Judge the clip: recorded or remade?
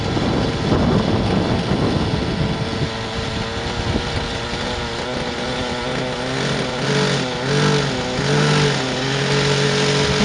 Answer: recorded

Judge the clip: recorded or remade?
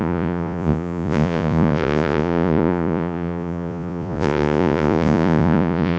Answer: remade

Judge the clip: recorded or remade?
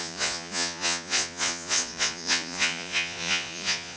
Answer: remade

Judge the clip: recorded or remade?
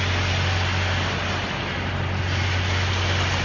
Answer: recorded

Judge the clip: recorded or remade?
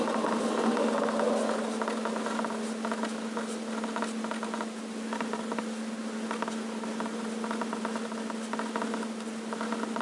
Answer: recorded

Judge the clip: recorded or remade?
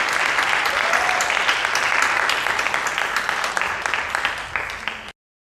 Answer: recorded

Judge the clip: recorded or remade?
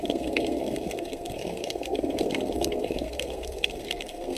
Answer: remade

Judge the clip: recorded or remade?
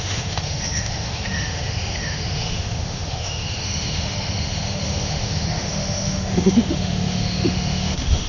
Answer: remade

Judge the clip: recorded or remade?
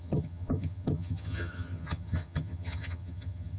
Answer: remade